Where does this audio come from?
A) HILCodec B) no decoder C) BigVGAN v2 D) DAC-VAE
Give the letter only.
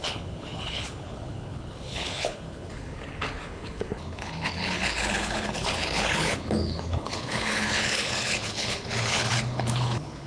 A